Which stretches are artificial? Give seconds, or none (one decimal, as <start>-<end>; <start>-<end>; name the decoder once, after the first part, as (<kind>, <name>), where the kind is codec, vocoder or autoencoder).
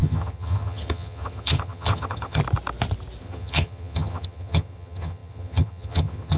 0.0-2.4 (vocoder, HiFi-GAN); 3.2-6.4